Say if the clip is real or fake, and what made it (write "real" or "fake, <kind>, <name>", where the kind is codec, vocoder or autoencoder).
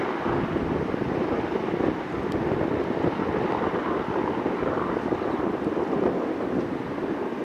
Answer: real